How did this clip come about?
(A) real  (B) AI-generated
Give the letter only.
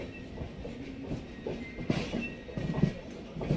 A